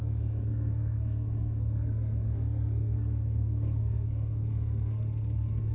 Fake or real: fake